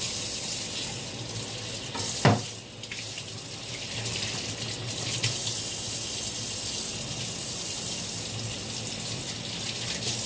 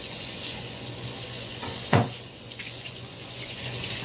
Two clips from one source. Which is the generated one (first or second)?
second